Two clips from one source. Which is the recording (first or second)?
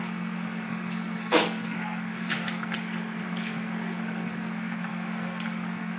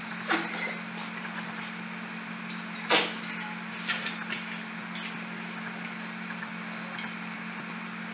second